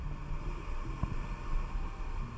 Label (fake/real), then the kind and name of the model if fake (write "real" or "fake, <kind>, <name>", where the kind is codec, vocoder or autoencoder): real